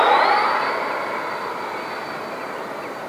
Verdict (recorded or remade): recorded